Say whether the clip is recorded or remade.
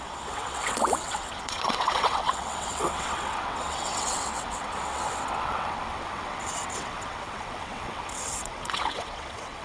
remade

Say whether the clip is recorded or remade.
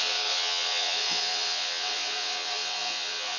remade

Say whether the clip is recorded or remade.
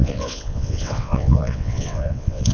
remade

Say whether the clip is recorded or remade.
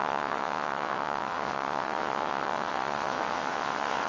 remade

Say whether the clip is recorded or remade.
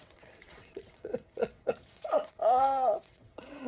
remade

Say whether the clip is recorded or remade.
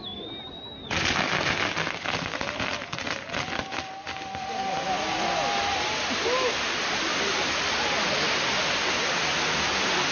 recorded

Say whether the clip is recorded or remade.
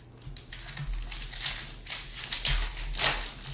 recorded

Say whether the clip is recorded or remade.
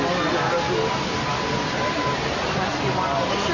recorded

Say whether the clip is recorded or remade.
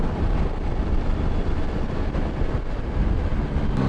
recorded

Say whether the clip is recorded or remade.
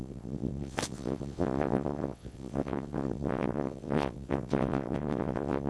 remade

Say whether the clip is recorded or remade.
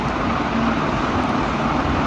recorded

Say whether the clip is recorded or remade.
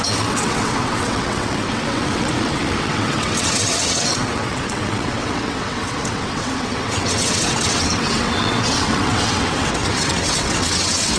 remade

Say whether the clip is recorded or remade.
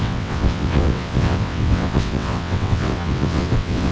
remade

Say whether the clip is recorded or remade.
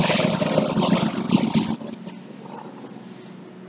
recorded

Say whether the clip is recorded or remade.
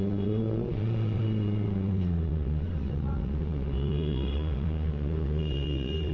remade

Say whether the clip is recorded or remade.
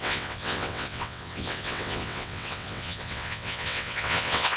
remade